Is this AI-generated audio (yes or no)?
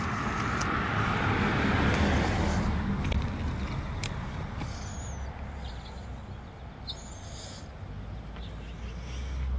no